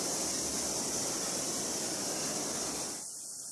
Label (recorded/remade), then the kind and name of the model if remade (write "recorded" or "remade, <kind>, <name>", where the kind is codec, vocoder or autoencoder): recorded